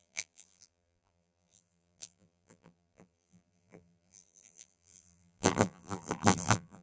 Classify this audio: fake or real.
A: fake